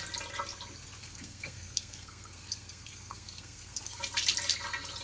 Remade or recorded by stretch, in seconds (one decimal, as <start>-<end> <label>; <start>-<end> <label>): 0.0-1.0 recorded; 1.0-4.0 remade; 4.0-5.0 recorded